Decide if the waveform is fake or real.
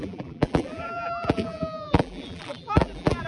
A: fake